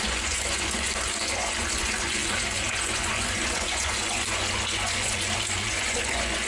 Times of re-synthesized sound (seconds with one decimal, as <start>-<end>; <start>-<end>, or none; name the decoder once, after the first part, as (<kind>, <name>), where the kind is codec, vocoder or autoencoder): 0.0-6.5 (vocoder, Vocos)